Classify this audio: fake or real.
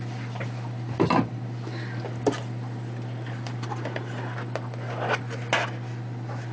real